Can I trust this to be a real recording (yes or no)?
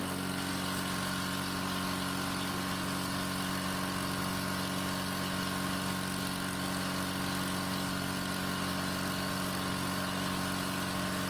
yes